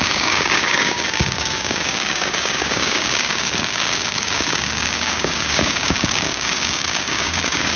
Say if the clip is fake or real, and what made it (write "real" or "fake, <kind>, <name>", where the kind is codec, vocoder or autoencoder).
fake, codec, DAC